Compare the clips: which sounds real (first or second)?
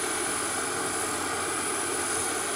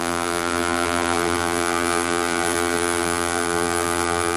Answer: first